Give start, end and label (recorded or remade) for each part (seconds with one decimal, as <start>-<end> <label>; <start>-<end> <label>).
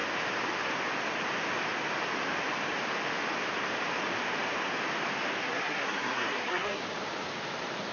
0.0-5.4 recorded; 5.4-6.8 remade; 6.8-7.9 recorded